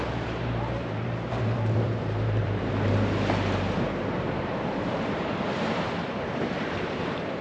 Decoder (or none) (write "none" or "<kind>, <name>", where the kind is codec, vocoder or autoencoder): vocoder, BigVGAN v2